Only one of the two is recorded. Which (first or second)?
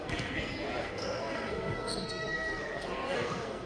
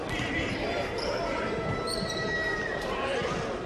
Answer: second